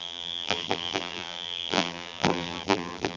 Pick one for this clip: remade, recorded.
remade